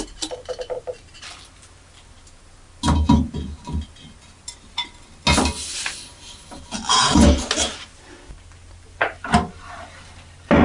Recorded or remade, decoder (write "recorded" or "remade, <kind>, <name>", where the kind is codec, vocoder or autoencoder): recorded